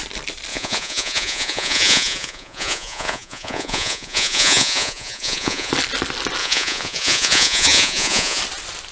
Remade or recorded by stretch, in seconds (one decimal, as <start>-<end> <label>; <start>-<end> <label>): 0.0-0.5 recorded; 0.5-5.7 remade; 5.7-6.4 recorded; 6.4-8.4 remade; 8.4-8.9 recorded